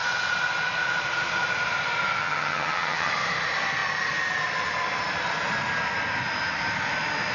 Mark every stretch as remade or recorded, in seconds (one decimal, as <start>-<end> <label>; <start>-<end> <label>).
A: 0.0-2.2 recorded; 2.2-3.1 remade; 3.1-7.3 recorded